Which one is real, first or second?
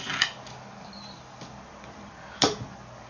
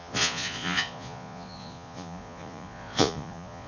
first